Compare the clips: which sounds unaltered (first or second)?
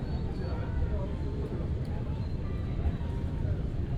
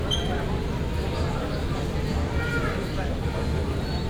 second